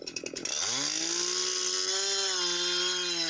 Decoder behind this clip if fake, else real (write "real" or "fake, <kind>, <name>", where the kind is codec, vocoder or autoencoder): real